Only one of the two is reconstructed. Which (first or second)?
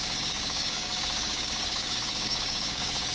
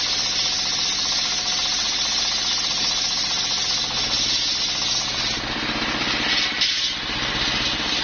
first